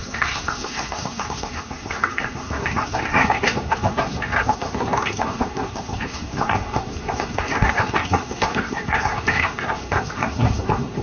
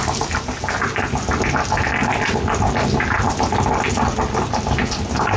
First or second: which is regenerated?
first